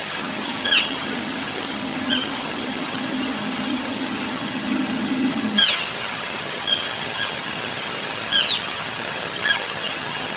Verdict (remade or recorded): remade